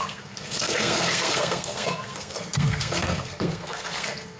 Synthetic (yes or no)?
yes